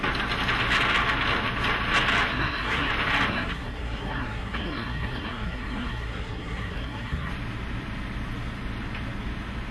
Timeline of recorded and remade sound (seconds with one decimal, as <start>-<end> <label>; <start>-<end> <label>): 0.0-2.3 recorded; 2.3-2.9 remade; 2.9-3.3 recorded; 3.3-7.3 remade; 7.3-9.7 recorded